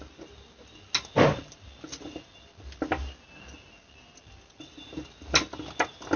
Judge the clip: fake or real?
real